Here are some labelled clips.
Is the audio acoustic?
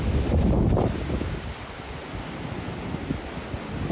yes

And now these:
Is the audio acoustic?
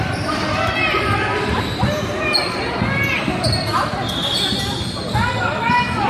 yes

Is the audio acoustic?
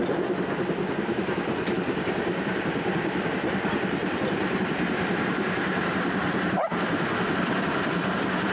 no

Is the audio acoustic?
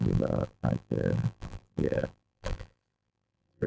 no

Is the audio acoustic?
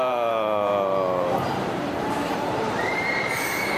no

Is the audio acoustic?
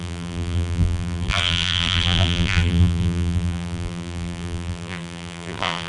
no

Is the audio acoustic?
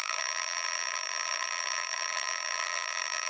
no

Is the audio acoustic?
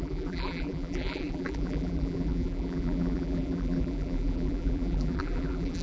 no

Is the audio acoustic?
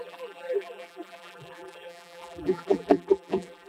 no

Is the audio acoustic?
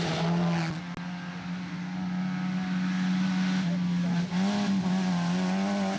yes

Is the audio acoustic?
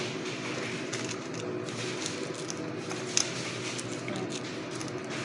yes